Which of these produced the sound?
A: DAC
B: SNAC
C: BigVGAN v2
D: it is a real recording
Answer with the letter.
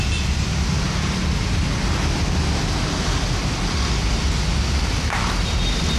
D